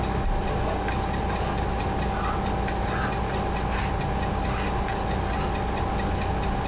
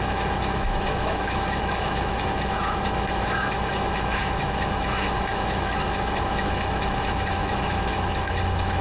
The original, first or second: first